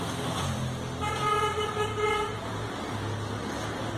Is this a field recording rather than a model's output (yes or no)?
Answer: yes